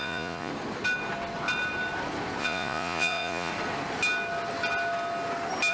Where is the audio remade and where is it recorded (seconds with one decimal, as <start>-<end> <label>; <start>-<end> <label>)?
0.0-0.5 remade; 0.5-2.4 recorded; 2.4-3.5 remade; 3.5-5.7 recorded